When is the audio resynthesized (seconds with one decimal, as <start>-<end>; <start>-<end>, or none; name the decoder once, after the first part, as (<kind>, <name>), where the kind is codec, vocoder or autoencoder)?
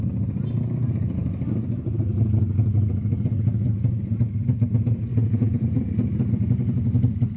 5.1-5.9 (vocoder, Vocos)